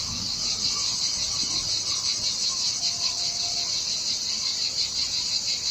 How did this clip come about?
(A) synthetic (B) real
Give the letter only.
B